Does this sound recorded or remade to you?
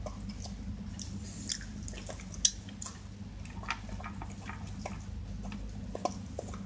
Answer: recorded